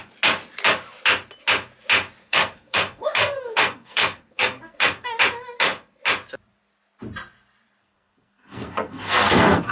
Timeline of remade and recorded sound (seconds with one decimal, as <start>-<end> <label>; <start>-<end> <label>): 0.0-2.2 recorded; 2.2-5.2 remade; 5.2-7.8 recorded; 7.8-9.7 remade